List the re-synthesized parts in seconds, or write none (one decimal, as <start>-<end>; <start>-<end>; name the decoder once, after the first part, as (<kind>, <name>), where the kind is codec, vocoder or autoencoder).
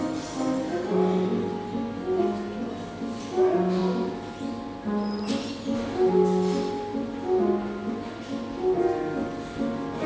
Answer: none